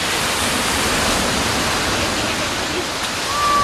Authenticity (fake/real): real